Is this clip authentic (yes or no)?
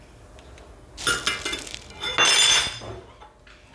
yes